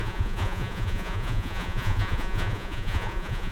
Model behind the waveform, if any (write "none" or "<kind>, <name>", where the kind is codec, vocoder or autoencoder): vocoder, Vocos